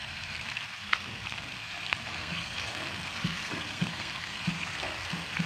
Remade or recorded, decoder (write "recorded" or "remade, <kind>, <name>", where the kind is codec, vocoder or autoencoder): remade, codec, SNAC